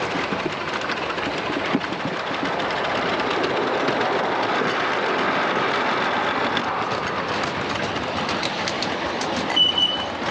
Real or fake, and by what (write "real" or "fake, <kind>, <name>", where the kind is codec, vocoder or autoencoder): real